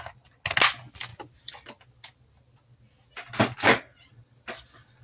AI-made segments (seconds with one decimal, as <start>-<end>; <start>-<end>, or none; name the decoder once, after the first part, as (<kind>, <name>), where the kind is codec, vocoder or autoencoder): none